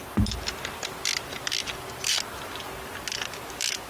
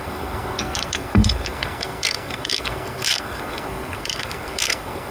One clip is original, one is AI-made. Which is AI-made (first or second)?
second